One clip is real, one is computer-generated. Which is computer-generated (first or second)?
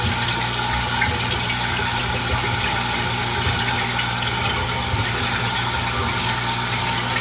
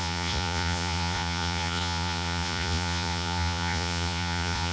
second